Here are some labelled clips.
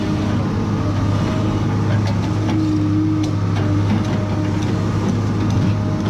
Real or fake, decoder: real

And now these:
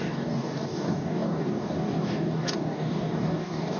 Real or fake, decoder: fake, codec, DAC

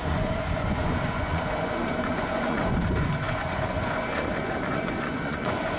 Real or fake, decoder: fake, vocoder, Vocos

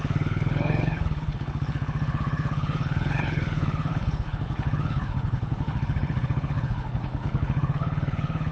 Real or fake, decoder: fake, codec, HILCodec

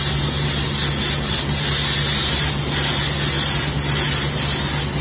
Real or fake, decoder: real